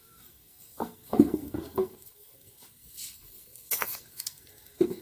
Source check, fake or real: fake